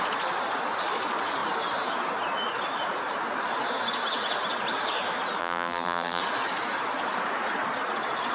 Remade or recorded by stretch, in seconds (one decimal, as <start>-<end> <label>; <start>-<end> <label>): 0.0-5.4 recorded; 5.4-6.2 remade; 6.2-8.3 recorded